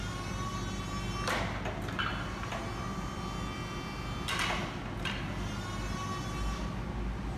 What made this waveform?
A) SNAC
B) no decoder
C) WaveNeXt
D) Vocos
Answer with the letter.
B